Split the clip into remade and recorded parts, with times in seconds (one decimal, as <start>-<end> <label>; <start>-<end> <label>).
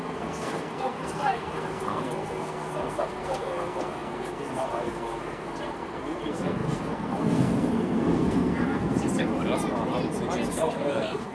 0.0-9.3 remade; 9.3-10.5 recorded; 10.5-11.3 remade